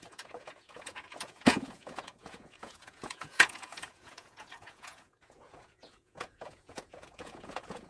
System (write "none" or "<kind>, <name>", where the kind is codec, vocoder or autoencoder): vocoder, Vocos